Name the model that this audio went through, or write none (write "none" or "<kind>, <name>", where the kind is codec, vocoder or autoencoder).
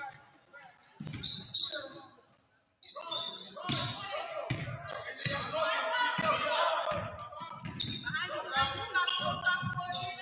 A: none